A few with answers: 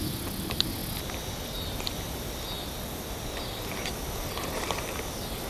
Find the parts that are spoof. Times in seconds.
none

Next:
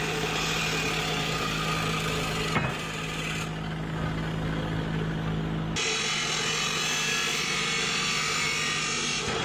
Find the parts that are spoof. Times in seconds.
none

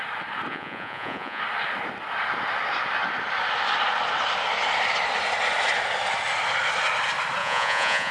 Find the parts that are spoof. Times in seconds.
0.5-1.4 (vocoder, Vocos); 7.4-8.1

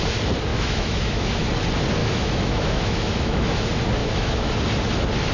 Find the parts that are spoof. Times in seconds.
0.5-1.5 (autoencoder, DAC-VAE); 2.0-3.6; 4.0-4.5

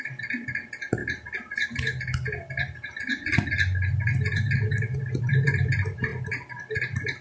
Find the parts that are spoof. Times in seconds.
none

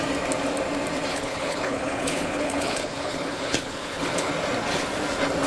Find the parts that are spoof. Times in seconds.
1.1-4.3 (codec, HILCodec)

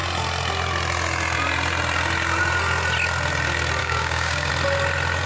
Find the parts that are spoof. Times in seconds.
3.8-4.5 (codec, DAC)